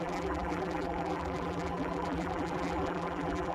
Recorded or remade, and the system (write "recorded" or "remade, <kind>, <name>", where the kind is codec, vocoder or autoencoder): remade, vocoder, BigVGAN v2